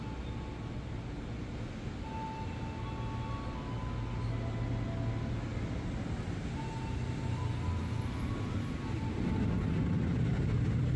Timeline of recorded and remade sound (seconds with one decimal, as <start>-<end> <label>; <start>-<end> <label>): 0.0-5.5 recorded; 5.5-6.0 remade; 6.0-11.0 recorded